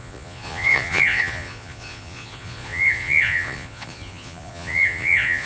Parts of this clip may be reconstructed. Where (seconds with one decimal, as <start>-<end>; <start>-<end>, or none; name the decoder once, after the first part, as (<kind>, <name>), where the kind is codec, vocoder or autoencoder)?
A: 0.0-5.5 (vocoder, Vocos)